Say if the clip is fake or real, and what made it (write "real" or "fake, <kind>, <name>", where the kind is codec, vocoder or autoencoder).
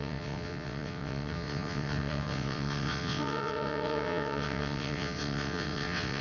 fake, vocoder, WaveNeXt